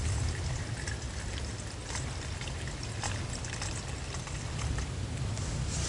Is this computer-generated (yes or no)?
no